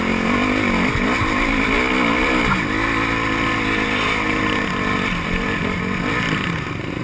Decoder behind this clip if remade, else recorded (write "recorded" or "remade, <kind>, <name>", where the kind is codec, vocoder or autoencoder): recorded